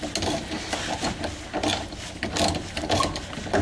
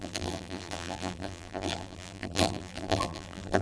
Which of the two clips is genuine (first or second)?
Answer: first